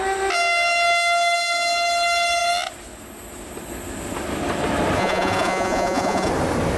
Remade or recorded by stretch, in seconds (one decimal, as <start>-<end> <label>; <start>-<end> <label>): 0.0-5.0 recorded; 5.0-6.3 remade; 6.3-6.8 recorded